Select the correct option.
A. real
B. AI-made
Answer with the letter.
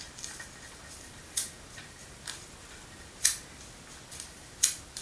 A